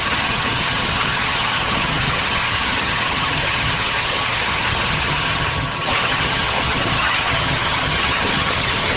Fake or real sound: fake